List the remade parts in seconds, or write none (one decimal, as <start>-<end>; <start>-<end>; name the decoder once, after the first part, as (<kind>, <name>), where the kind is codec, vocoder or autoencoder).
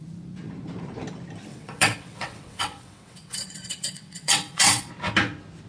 1.5-4.9 (vocoder, WaveNeXt)